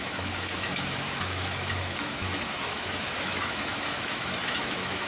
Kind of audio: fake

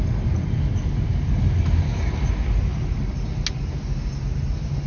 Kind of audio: real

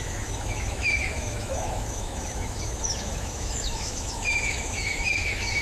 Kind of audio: fake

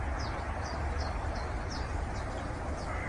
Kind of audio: real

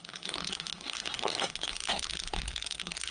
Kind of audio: fake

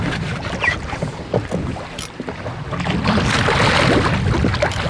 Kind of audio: real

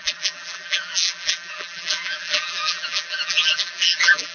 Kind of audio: fake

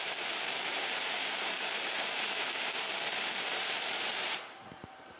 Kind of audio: fake